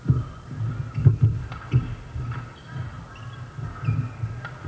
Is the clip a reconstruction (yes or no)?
no